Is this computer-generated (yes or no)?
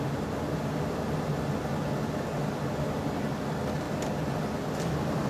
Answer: no